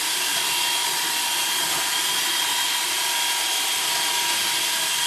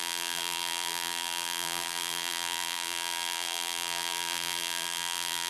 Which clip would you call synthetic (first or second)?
second